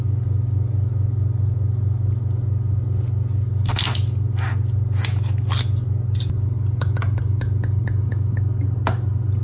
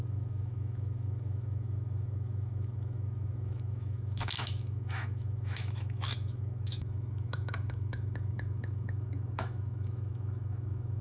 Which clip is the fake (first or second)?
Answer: second